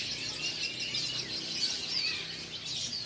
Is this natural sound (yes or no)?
yes